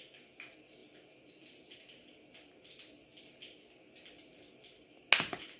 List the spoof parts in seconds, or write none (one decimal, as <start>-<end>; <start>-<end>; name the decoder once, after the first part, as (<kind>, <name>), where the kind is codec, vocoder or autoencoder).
none